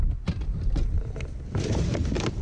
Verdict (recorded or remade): recorded